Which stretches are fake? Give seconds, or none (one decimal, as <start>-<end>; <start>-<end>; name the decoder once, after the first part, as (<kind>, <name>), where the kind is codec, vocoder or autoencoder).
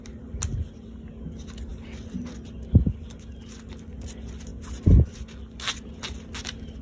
none